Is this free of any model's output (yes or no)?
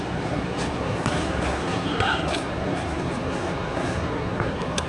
no